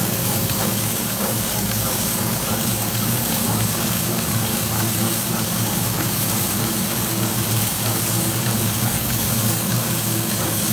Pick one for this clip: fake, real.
fake